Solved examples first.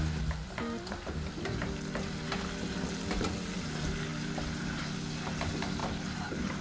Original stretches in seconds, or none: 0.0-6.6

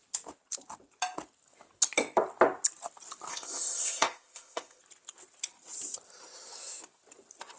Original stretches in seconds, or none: 0.0-3.3; 4.8-7.6

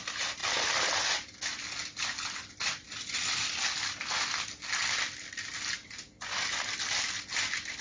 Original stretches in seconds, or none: 0.0-7.8